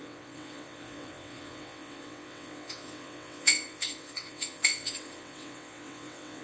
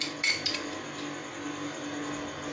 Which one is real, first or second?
second